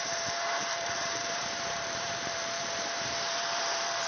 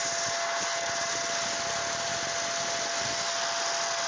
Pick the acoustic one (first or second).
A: second